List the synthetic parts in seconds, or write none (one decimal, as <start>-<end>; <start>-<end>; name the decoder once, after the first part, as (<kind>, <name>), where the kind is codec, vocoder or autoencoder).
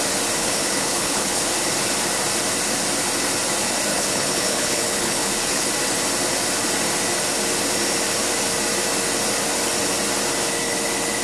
0.4-1.5 (codec, HILCodec); 3.9-5.7